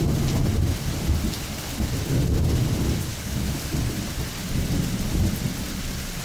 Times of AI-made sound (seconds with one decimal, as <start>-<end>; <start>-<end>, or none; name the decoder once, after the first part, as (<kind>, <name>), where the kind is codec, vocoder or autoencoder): 3.1-3.7 (codec, DAC)